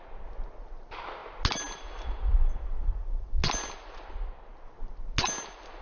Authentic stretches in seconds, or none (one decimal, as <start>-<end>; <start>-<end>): 0.0-5.8